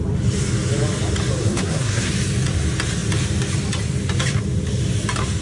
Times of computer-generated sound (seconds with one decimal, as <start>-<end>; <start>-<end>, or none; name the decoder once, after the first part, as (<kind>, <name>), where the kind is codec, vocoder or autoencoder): 1.4-2.1 (codec, SNAC)